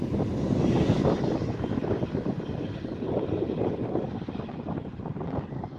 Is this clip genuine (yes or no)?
yes